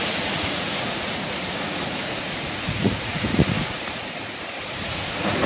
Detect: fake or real fake